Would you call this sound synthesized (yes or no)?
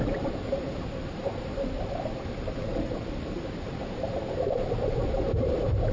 yes